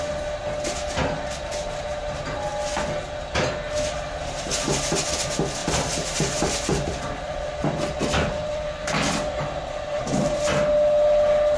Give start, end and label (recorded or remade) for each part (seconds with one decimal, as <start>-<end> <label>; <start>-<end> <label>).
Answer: 0.0-5.6 recorded; 5.6-10.4 remade; 10.4-11.6 recorded